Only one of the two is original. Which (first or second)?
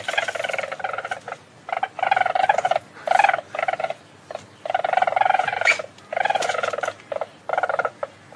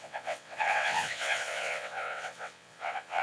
first